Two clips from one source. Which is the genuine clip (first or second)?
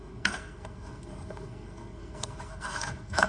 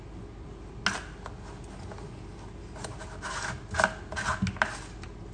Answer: second